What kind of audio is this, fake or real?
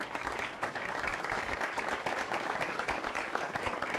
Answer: fake